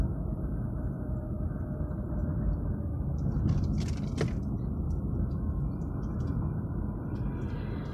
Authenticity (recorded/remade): recorded